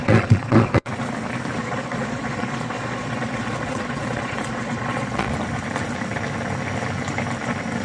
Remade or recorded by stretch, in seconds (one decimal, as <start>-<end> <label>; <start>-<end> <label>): 0.0-0.9 remade; 0.9-1.6 recorded; 1.6-5.3 remade; 5.3-7.8 recorded